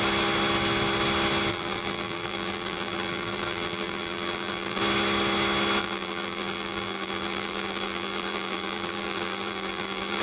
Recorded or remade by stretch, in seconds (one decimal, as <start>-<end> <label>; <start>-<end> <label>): 0.0-1.5 recorded; 1.5-4.8 remade; 4.8-5.8 recorded; 5.8-10.2 remade